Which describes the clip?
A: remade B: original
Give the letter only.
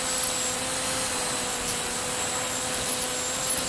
B